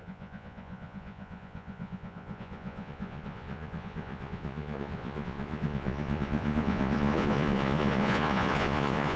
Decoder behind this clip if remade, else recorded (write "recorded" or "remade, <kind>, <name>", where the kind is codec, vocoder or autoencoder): remade, vocoder, Vocos